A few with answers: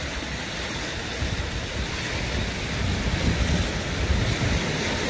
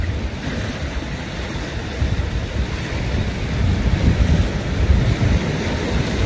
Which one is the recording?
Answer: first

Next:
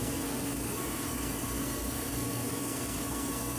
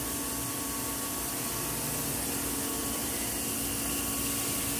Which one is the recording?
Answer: second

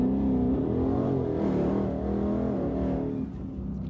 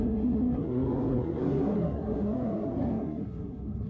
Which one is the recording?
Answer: first